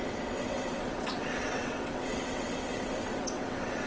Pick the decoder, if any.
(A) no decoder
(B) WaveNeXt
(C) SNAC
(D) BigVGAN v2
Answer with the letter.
B